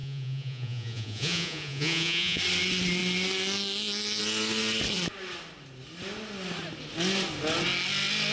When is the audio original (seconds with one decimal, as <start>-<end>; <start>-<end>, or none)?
2.4-8.3